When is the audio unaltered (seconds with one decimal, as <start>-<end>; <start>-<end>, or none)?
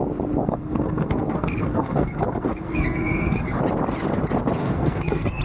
0.0-0.4; 3.6-4.6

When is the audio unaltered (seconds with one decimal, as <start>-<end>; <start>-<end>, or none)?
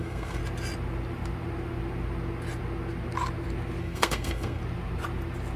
0.4-3.8; 4.6-5.6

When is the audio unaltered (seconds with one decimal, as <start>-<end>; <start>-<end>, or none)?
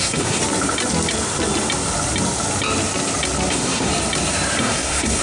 0.4-3.5; 3.9-4.6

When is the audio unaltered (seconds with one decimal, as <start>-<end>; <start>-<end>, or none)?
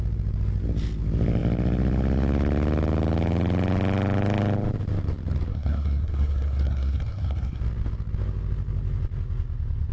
0.0-5.5; 7.6-9.9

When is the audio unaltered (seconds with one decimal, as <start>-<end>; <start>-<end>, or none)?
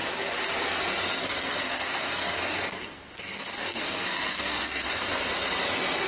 0.0-1.2; 4.9-6.1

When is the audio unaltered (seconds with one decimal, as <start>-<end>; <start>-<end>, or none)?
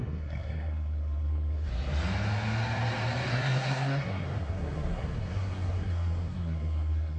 1.7-3.3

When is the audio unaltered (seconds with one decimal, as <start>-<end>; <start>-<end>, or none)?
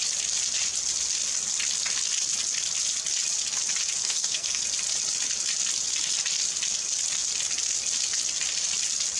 0.0-4.0; 4.6-9.2